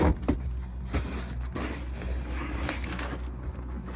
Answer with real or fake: real